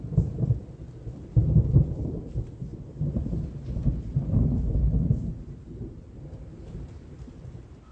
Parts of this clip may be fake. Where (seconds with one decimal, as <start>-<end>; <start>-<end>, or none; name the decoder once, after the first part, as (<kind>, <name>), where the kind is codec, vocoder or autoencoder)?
none